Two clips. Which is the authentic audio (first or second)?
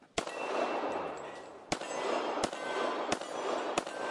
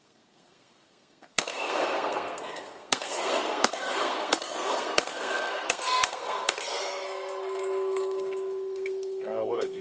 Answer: first